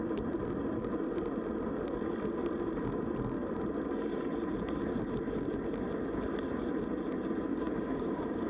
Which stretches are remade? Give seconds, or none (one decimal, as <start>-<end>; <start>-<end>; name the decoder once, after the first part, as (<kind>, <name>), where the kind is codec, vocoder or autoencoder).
7.5-8.5 (codec, DAC)